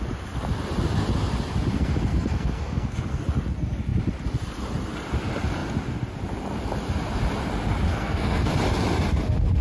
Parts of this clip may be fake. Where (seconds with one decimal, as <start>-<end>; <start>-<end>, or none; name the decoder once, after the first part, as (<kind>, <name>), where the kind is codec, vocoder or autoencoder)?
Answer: 1.7-3.2 (codec, SNAC); 7.9-8.5